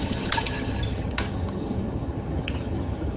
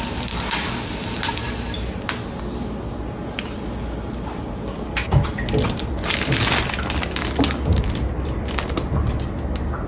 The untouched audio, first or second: second